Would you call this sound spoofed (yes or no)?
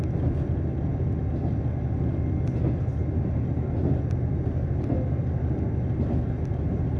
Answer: no